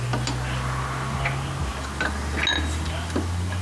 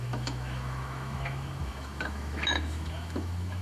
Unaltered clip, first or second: first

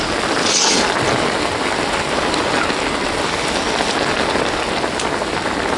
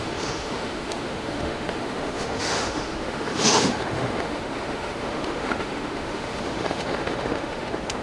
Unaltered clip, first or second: first